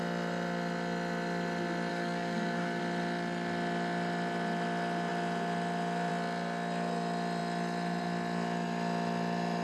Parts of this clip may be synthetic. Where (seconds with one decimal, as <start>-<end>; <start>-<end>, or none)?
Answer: 1.9-2.8